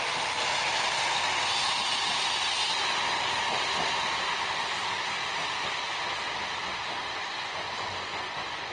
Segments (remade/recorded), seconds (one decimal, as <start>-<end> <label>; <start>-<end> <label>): 0.0-7.2 recorded; 7.2-8.7 remade